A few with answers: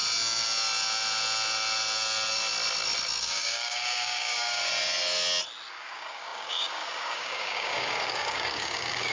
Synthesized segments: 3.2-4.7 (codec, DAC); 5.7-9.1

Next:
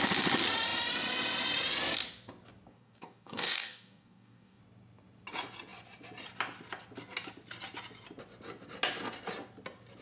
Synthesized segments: 2.7-4.6 (codec, DAC)

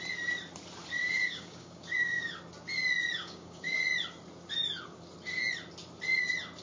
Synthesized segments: 1.0-2.3 (codec, DAC); 3.2-3.8

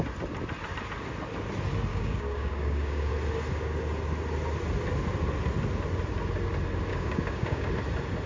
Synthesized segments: 1.9-3.1 (codec, DAC); 6.9-7.7

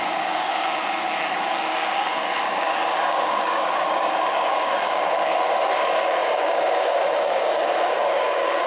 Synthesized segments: 0.0-8.7 (codec, DAC)

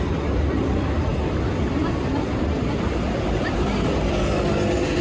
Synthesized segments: none

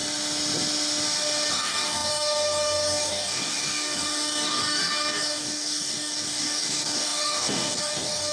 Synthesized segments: 1.5-8.3 (codec, DAC)

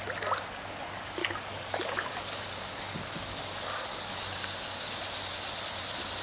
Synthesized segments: 1.2-4.9 (codec, DAC)